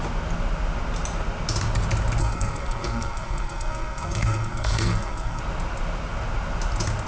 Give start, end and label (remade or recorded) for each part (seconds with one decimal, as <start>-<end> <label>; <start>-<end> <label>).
0.0-2.2 recorded; 2.2-5.4 remade; 5.4-7.1 recorded